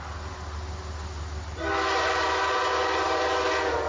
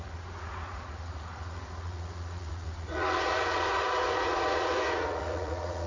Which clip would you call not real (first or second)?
second